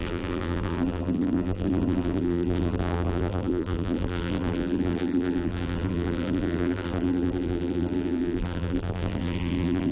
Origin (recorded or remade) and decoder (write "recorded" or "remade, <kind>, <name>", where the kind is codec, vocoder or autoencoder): remade, vocoder, BigVGAN v2